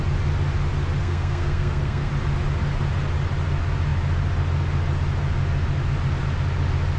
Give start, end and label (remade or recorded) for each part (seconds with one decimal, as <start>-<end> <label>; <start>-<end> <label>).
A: 0.0-1.0 recorded; 1.0-2.1 remade; 2.1-7.0 recorded